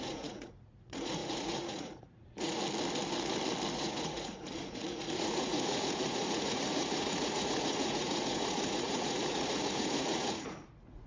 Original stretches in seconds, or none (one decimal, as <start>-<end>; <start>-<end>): 2.6-3.7